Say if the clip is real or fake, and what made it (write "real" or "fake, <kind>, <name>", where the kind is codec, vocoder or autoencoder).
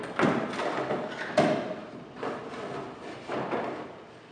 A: real